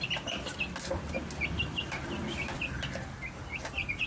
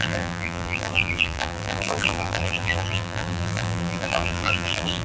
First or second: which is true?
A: first